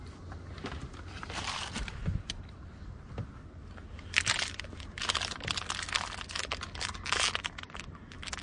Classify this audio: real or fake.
real